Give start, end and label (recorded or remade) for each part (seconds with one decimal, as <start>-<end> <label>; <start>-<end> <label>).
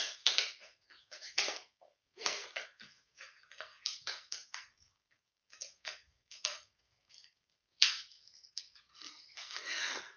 0.0-10.2 remade